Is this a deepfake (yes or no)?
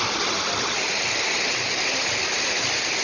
no